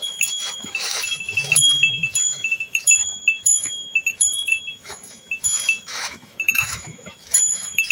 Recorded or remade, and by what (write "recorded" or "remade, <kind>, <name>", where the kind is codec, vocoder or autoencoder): remade, autoencoder, DAC-VAE